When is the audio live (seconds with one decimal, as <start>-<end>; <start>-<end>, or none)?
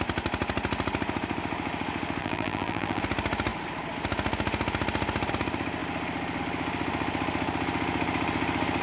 0.0-2.2; 3.0-8.8